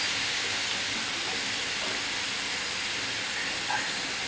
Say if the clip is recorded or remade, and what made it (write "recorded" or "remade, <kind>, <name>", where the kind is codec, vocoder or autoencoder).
recorded